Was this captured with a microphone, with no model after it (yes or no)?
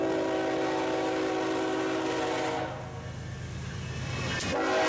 yes